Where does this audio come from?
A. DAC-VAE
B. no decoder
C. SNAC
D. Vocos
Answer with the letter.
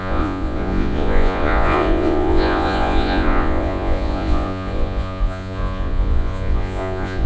D